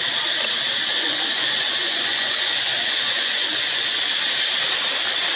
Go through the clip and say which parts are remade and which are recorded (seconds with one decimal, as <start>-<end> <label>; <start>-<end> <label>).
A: 0.0-0.9 recorded; 0.9-4.1 remade; 4.1-5.4 recorded